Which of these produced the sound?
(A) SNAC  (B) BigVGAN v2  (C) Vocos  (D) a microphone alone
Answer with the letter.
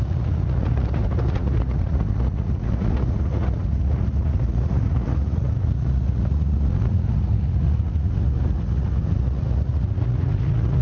C